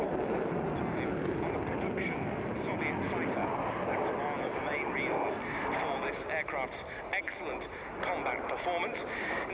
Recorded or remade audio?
recorded